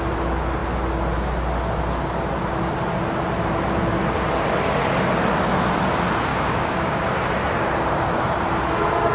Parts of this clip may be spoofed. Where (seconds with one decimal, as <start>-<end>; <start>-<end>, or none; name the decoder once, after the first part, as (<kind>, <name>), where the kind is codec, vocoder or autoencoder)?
6.3-7.0 (codec, DAC)